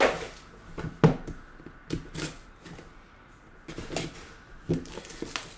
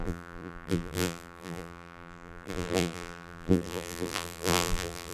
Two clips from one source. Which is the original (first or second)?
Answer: first